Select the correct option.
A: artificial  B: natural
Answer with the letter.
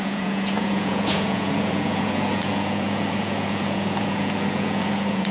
A